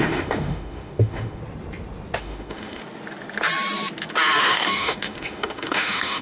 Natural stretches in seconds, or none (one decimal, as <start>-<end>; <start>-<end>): 1.4-2.2; 2.8-4.4

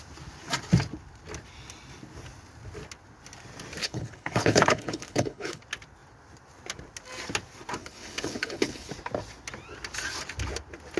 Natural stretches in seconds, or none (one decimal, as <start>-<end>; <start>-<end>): 0.0-3.8; 5.6-7.8; 8.9-11.0

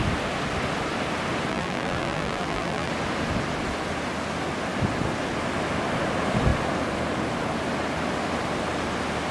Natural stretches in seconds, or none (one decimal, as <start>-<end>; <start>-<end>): 0.0-1.5; 2.9-9.3

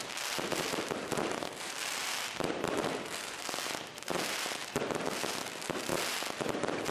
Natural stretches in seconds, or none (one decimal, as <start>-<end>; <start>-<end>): 5.9-6.4

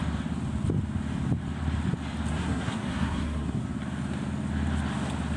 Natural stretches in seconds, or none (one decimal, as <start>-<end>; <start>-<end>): 0.0-2.3; 3.6-5.4

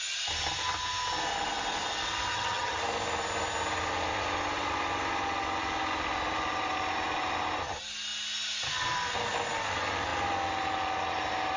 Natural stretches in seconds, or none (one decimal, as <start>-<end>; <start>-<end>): 0.0-2.3; 2.8-11.6

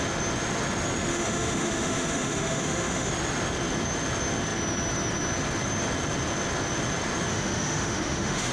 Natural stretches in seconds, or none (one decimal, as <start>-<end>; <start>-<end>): 0.0-1.1; 3.1-7.3

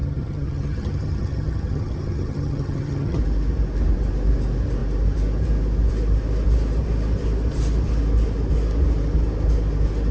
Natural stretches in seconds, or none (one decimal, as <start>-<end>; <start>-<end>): 3.2-10.1